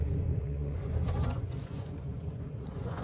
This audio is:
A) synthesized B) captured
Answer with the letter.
A